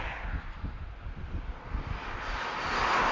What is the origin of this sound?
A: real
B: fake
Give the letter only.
A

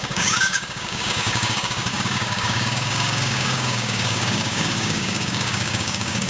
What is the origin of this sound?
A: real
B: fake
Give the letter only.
B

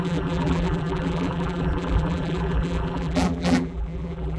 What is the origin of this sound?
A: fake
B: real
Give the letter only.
A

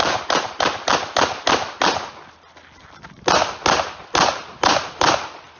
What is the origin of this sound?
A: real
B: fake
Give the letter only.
A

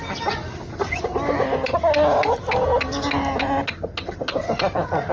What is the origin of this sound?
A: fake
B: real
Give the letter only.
B